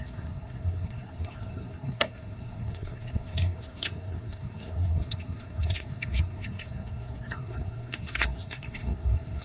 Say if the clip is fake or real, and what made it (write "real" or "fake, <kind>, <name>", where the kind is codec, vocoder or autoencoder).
fake, codec, SNAC